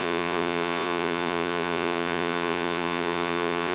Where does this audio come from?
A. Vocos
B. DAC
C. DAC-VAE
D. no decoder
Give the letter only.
A